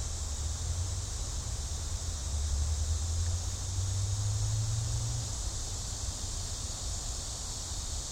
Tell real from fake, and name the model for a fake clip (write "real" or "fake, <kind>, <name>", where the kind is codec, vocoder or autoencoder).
real